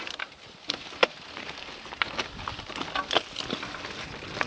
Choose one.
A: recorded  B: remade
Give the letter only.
A